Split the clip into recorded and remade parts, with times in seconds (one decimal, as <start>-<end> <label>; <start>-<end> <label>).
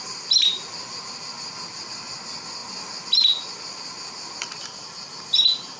0.0-5.8 recorded